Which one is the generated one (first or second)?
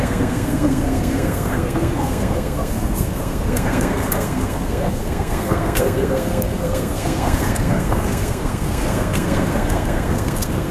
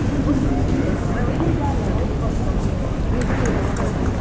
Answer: first